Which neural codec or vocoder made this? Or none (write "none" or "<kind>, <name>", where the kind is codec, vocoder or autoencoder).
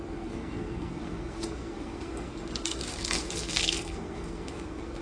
codec, SNAC